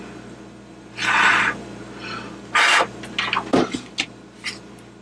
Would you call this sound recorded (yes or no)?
yes